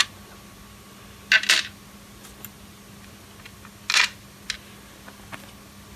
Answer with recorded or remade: recorded